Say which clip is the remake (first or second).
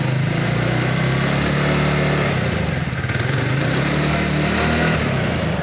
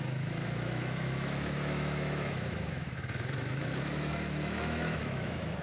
second